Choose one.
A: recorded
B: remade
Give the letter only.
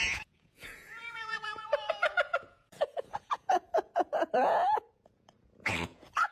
B